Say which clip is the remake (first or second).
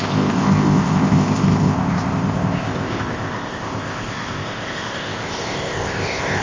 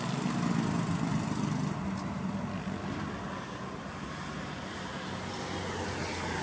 first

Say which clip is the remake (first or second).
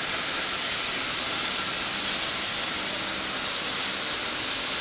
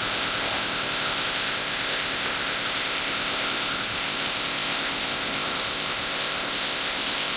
second